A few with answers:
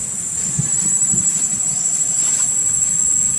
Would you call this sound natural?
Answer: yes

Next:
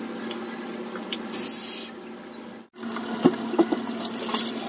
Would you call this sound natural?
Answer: yes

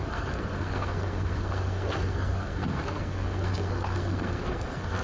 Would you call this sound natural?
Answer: no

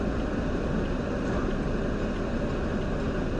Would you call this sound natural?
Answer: yes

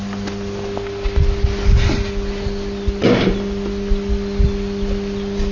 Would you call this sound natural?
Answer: yes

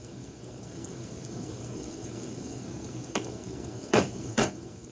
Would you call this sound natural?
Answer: no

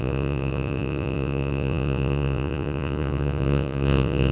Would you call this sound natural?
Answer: no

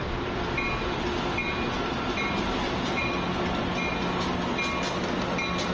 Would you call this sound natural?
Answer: yes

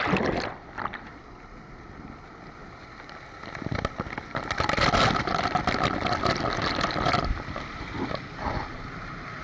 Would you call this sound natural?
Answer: yes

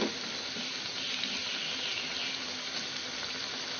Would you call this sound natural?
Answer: yes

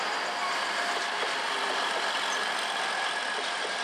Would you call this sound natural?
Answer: no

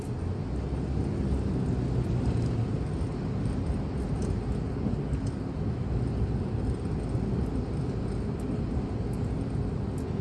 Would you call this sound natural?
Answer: yes